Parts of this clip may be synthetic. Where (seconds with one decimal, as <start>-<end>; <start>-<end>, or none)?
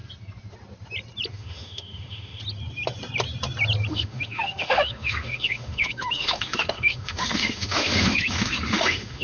1.3-2.4; 3.9-9.2